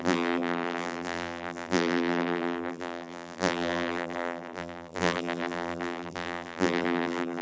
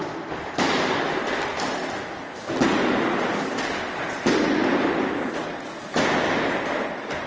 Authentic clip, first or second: second